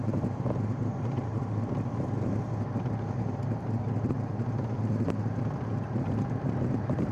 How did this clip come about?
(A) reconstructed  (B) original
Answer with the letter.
A